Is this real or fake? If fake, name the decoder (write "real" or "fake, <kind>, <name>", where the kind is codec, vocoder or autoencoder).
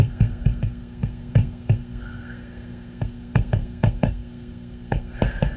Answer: fake, codec, SNAC